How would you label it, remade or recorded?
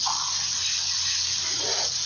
recorded